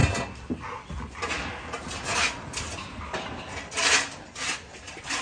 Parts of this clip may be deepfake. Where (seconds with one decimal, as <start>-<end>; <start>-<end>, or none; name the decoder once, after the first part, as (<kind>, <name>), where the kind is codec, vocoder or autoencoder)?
none